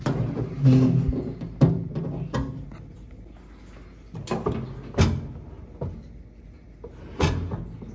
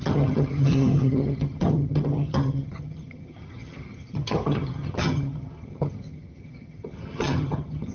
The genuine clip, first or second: first